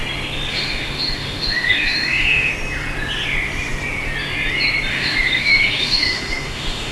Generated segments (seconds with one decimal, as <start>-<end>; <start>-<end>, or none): 0.5-2.5; 4.9-6.9